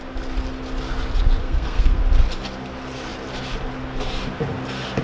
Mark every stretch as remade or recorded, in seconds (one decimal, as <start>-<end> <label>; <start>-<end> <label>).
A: 0.0-1.4 recorded; 1.4-2.0 remade; 2.0-5.0 recorded